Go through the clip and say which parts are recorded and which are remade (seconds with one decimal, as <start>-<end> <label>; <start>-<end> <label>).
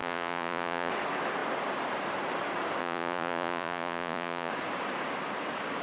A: 0.0-0.9 remade; 0.9-2.8 recorded; 2.8-4.5 remade; 4.5-5.8 recorded